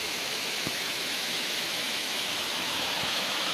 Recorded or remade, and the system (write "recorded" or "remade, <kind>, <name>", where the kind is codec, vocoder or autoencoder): remade, autoencoder, DAC-VAE